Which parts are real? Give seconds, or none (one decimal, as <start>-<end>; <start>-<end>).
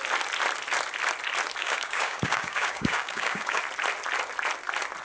0.0-1.6; 3.6-5.0